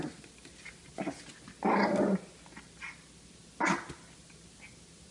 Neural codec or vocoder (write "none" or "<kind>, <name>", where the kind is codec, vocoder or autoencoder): none